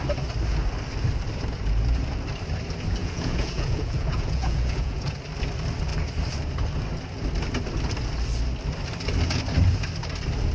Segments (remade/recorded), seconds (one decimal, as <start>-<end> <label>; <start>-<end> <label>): 0.0-3.0 recorded; 3.0-5.2 remade; 5.2-10.5 recorded